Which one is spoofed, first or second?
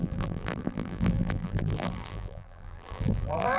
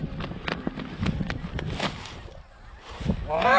first